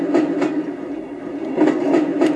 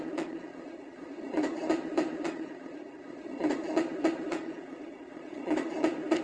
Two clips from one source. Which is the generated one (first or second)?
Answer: second